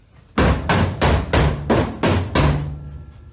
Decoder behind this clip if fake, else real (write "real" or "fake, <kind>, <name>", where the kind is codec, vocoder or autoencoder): real